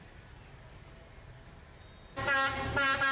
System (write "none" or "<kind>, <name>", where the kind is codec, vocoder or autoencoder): none